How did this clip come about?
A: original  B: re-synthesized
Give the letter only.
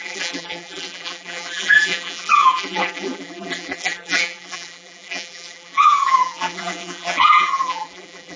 B